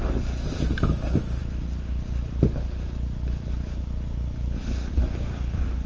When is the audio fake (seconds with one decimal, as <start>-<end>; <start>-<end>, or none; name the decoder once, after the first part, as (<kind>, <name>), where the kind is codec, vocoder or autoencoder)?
none